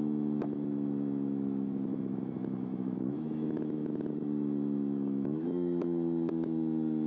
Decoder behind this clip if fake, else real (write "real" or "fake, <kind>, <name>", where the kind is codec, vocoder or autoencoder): fake, autoencoder, DAC-VAE